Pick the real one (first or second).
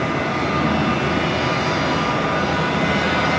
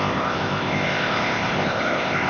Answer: first